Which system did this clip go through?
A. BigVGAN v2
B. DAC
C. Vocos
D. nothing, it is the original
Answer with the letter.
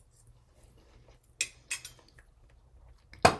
D